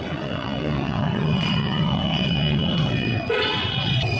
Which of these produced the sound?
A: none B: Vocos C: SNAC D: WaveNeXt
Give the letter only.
D